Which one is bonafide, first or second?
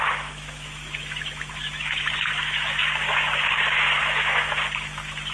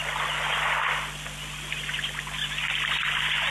second